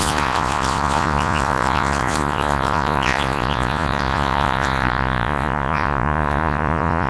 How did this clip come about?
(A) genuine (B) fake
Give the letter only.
B